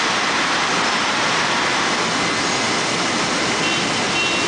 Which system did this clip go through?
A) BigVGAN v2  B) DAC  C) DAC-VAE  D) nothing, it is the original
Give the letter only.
D